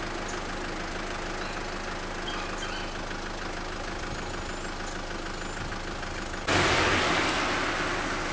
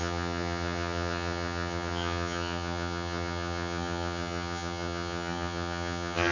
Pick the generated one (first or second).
second